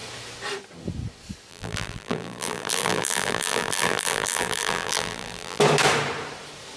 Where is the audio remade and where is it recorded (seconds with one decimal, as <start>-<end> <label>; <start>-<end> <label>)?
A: 0.0-1.5 recorded; 1.5-5.6 remade; 5.6-6.8 recorded